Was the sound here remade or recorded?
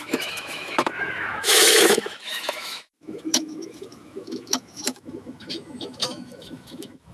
remade